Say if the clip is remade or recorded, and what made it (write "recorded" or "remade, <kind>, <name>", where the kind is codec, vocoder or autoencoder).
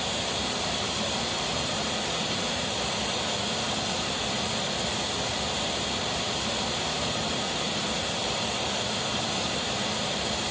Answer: remade, vocoder, BigVGAN v2